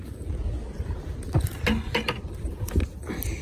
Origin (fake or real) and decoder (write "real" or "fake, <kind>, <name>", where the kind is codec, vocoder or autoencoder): real